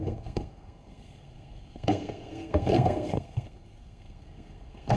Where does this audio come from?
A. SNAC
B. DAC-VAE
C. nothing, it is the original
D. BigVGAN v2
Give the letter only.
A